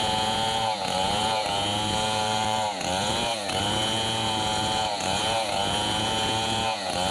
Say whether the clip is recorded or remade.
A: remade